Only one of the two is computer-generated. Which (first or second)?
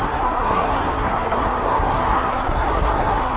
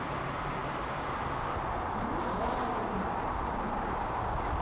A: first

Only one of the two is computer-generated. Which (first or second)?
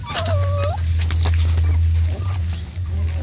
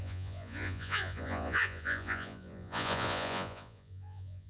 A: second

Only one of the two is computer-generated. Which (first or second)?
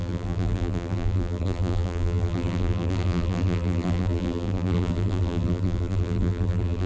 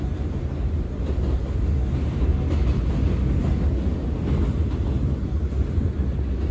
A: first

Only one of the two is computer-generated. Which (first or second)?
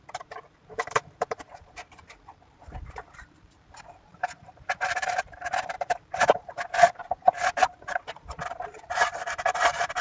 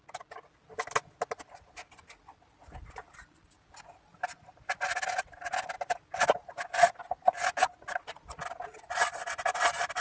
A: first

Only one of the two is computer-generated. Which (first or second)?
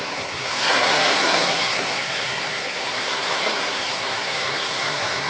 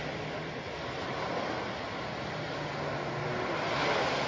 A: first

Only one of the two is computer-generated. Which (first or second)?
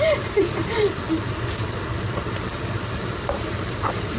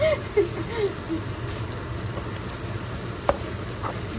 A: first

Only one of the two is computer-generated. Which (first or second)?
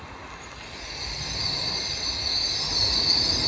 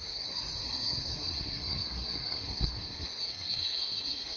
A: second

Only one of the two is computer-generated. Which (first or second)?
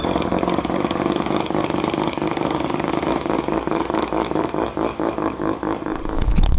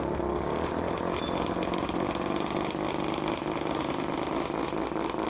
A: first